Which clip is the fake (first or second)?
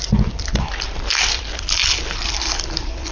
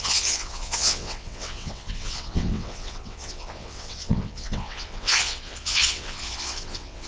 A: second